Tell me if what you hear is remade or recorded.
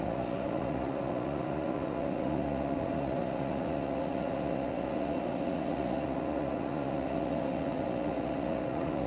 remade